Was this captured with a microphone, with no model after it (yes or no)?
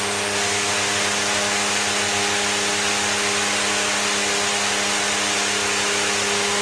yes